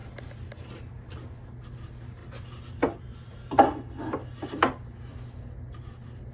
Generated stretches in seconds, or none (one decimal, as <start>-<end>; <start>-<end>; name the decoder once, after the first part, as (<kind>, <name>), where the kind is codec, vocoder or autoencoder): none